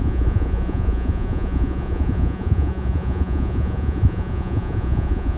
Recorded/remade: remade